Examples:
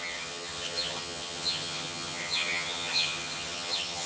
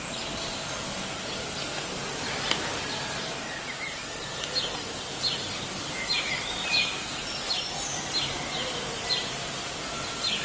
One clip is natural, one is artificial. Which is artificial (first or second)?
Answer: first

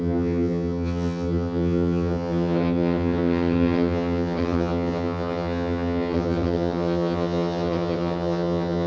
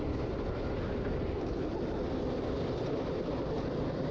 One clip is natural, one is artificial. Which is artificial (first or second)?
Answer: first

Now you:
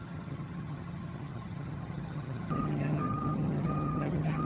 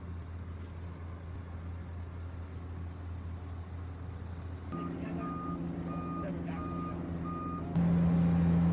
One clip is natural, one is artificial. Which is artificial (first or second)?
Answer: first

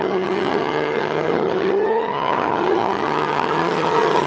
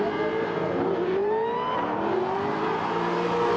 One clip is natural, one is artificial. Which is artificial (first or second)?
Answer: first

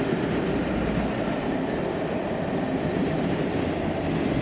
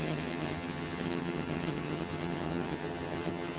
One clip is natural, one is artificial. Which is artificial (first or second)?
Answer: second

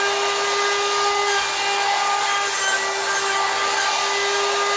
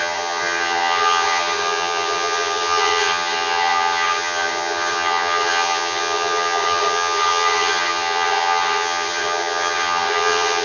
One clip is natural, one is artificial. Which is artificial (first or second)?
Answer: second